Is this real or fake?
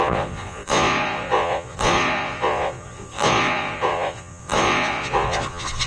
fake